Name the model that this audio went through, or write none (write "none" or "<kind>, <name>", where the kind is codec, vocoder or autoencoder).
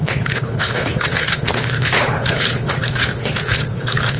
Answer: codec, HILCodec